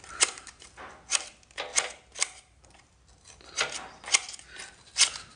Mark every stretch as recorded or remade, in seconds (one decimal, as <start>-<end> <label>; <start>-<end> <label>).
0.0-5.4 recorded